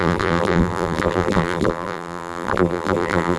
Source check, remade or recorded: remade